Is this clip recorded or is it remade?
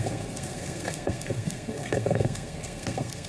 remade